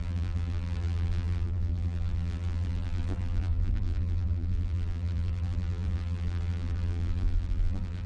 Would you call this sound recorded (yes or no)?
no